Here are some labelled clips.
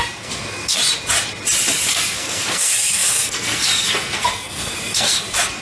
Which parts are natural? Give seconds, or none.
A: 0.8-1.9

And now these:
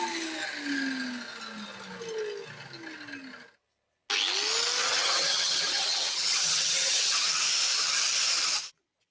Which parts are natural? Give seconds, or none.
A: 0.0-4.8; 7.3-9.1

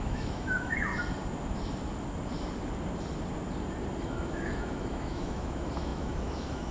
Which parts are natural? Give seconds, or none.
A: 0.9-4.0

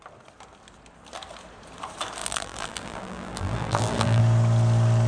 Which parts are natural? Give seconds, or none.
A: 0.0-2.2; 4.2-5.1

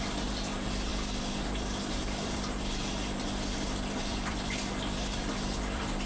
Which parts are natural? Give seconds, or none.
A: 0.0-0.9; 2.9-4.1

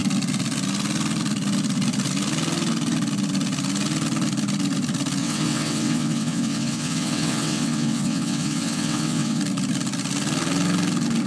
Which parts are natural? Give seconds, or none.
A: 0.0-5.2; 9.4-11.3

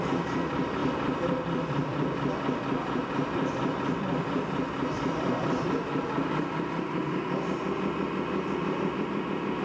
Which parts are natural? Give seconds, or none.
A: 0.0-0.8; 5.7-9.6

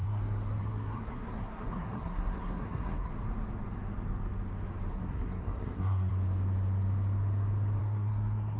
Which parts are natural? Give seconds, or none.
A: 3.1-4.9; 6.1-7.8